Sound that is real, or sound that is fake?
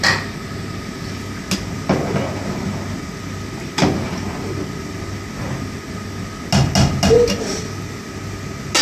real